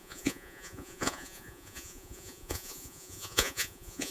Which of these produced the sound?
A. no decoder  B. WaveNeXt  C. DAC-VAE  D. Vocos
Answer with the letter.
D